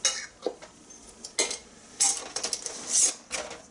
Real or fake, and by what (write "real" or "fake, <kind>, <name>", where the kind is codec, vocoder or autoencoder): real